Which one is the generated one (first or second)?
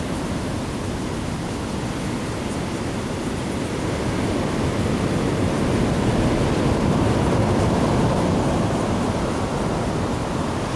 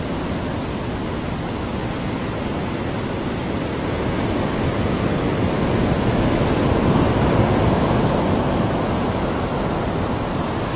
second